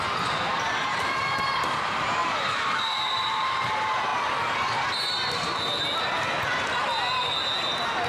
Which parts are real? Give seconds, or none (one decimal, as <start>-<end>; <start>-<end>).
4.1-8.1